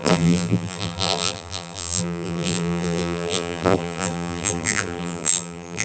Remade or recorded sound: remade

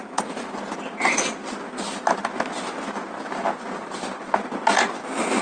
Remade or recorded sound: recorded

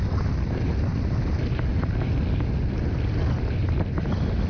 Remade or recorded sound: recorded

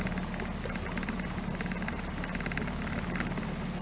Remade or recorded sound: recorded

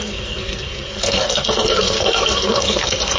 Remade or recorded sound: remade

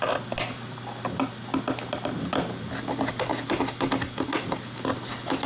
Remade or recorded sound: recorded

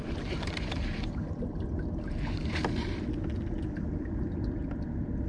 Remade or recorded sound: recorded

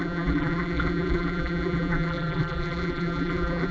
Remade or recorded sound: remade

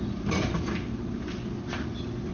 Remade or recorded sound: recorded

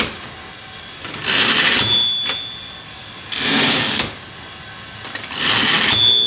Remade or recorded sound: recorded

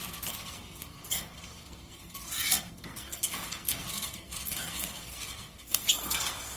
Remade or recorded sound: remade